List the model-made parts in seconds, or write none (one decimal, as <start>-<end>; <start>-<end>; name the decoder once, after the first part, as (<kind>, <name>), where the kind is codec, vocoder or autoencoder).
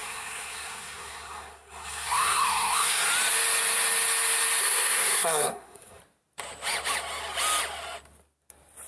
0.0-3.1 (codec, SNAC); 4.6-6.0